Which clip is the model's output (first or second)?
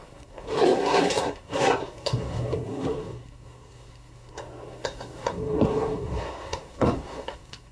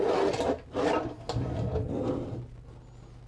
first